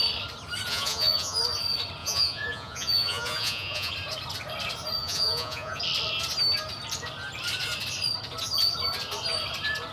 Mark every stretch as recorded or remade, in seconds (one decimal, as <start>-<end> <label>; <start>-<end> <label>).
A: 0.0-0.7 recorded; 0.7-1.4 remade; 1.4-2.0 recorded; 2.0-3.9 remade; 3.9-5.0 recorded; 5.0-5.8 remade; 5.8-9.9 recorded